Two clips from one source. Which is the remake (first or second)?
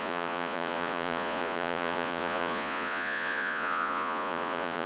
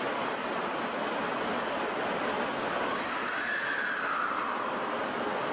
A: first